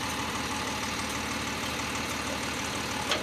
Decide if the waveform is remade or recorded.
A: recorded